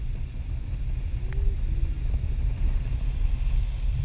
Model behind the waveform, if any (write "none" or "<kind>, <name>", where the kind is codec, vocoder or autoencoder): none